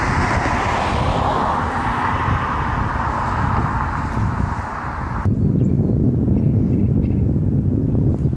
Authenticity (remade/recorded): recorded